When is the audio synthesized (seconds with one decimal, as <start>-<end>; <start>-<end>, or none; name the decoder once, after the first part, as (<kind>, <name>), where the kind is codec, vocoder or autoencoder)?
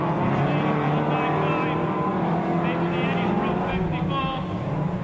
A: none